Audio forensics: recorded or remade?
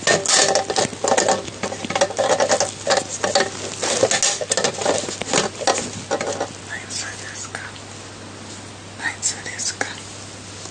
recorded